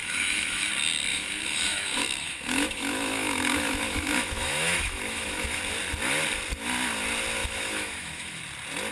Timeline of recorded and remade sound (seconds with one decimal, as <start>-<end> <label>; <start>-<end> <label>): 0.0-0.7 remade; 0.7-1.1 recorded; 1.1-5.6 remade; 5.6-7.4 recorded; 7.4-8.4 remade; 8.4-8.9 recorded